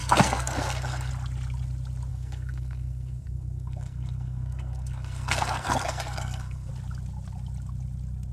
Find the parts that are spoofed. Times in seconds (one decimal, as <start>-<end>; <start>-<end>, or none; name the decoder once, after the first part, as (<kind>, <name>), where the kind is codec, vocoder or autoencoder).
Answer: 0.0-1.1 (codec, SNAC); 2.1-6.7